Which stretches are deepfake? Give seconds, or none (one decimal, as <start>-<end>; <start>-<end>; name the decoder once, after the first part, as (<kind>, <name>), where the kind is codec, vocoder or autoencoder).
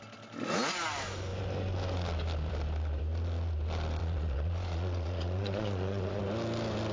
4.0-6.2 (vocoder, Vocos)